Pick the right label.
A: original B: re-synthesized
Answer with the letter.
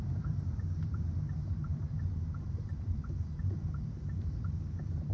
B